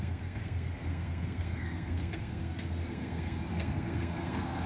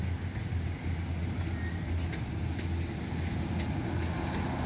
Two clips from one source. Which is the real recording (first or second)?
second